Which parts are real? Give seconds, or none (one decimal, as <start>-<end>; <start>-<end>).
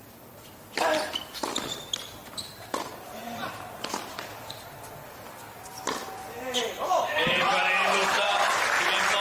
0.0-2.2; 4.8-6.0; 8.3-9.2